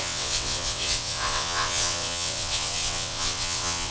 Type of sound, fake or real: fake